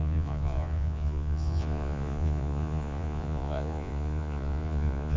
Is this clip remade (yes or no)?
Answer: yes